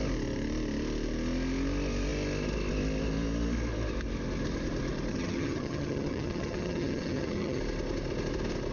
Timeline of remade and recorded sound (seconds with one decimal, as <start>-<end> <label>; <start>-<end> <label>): 0.0-5.1 recorded; 5.1-7.6 remade; 7.6-8.7 recorded